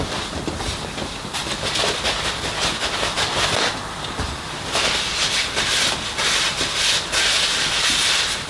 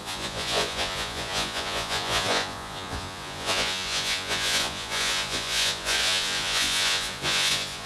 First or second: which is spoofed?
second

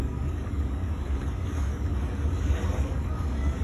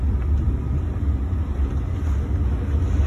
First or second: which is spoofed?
first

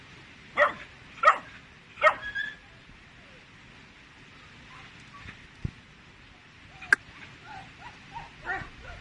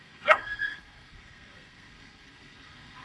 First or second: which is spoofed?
second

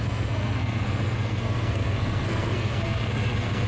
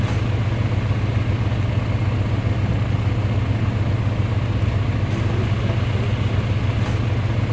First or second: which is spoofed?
first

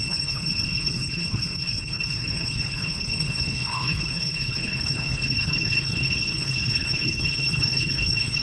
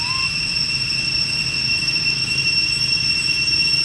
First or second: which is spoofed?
first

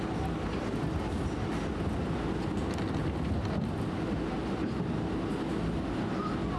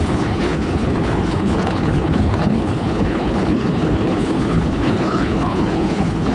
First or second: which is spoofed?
second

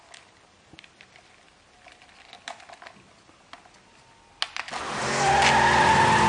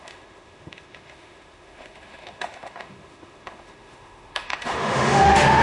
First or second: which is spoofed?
second